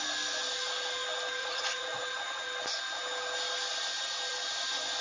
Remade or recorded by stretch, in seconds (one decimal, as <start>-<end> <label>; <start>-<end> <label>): 0.0-1.4 recorded; 1.4-2.0 remade; 2.0-5.0 recorded